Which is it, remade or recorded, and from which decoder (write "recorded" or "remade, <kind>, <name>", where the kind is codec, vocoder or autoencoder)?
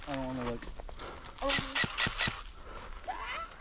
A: recorded